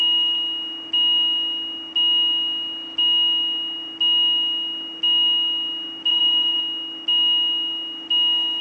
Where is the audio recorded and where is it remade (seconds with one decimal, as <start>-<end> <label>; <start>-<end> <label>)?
0.0-6.1 recorded; 6.1-6.6 remade; 6.6-8.6 recorded